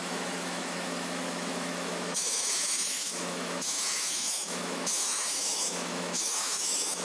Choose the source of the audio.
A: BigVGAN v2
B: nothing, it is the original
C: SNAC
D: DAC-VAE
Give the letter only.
D